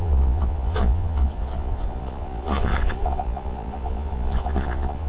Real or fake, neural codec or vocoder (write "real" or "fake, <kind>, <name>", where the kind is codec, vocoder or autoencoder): fake, vocoder, Vocos